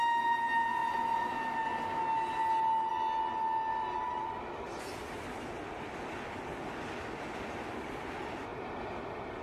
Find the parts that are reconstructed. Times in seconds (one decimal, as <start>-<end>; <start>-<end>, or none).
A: 3.7-4.4; 8.5-9.4